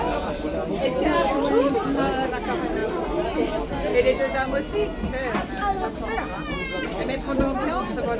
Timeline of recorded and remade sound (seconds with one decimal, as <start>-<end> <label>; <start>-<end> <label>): 0.0-8.2 recorded